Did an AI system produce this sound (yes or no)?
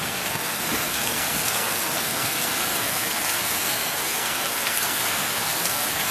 yes